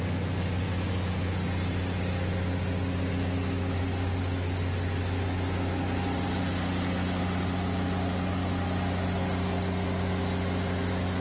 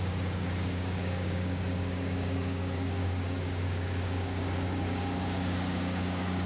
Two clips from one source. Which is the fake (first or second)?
second